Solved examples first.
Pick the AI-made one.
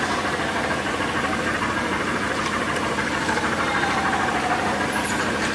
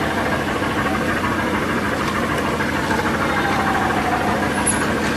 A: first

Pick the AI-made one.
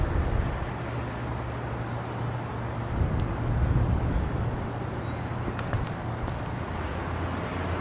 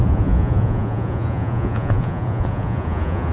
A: second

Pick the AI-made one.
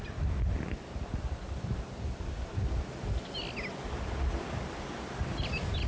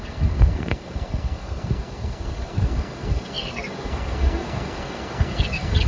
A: second